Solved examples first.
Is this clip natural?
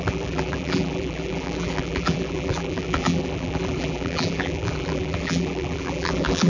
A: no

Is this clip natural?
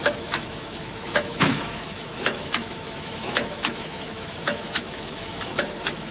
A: no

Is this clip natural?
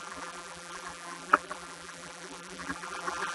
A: no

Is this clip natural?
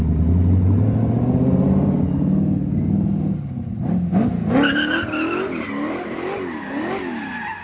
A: yes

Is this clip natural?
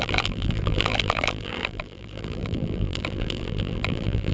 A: no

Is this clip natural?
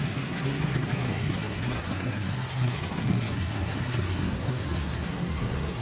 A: no